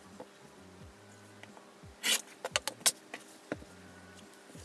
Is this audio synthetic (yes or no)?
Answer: no